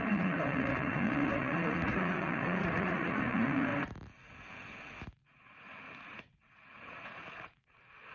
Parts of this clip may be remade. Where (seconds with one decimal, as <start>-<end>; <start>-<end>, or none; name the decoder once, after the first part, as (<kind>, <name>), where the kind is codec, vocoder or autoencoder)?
0.0-3.7 (vocoder, Vocos); 6.1-8.1